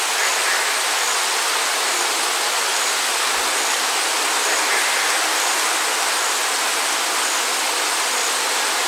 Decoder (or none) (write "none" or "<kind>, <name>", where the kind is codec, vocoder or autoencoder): none